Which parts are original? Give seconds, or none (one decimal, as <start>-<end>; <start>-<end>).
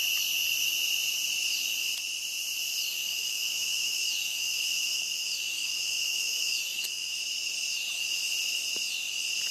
0.0-2.9; 7.2-9.5